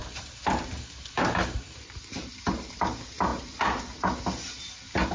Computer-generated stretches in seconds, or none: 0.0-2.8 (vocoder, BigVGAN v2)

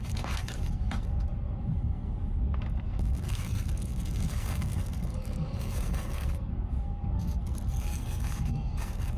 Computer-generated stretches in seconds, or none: 0.0-9.2 (codec, SNAC)

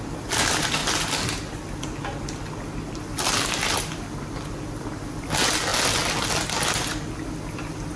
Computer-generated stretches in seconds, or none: none

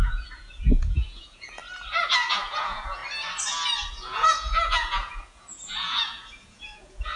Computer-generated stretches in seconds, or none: 0.0-1.6 (vocoder, Vocos); 2.3-3.0; 3.9-7.2

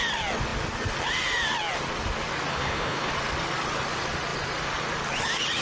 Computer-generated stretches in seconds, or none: 2.5-3.1 (codec, HILCodec)

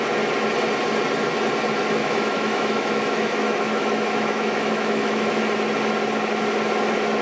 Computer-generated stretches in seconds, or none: 2.0-5.4 (autoencoder, DAC-VAE)

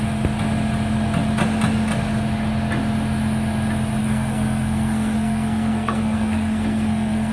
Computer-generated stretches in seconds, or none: 4.0-7.3 (codec, SNAC)